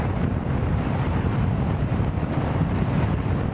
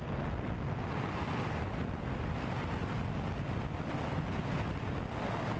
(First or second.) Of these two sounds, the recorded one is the second